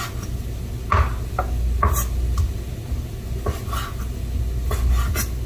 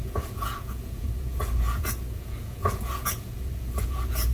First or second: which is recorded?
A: first